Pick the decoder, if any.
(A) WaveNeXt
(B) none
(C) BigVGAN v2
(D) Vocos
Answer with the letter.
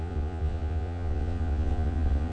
D